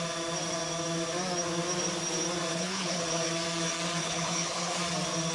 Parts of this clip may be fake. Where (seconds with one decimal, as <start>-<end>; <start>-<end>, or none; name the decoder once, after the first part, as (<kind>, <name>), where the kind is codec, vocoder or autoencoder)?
2.5-3.3 (codec, HILCodec); 4.0-4.8